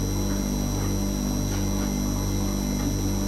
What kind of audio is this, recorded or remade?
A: recorded